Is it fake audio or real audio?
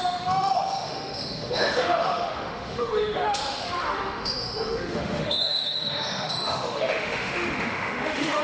fake